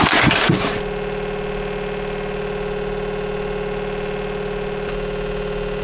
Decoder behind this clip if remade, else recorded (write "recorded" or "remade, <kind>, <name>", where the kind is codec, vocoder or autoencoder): recorded